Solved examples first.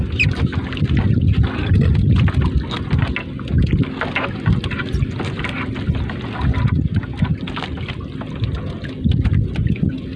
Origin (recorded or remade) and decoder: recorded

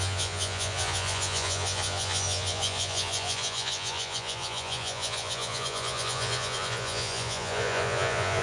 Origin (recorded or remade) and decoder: remade, vocoder, Vocos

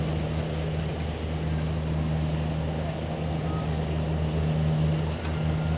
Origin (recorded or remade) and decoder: recorded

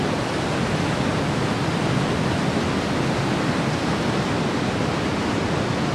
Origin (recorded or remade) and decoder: recorded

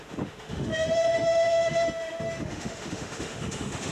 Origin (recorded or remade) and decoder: remade, autoencoder, DAC-VAE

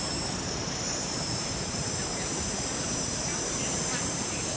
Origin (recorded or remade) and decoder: remade, vocoder, BigVGAN v2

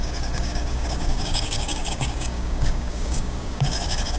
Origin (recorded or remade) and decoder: remade, codec, DAC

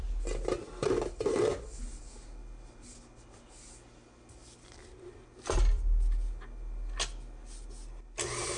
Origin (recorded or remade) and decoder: recorded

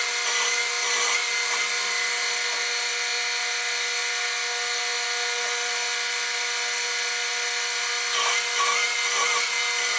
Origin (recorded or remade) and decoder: recorded